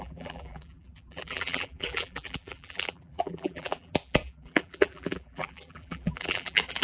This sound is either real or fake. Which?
fake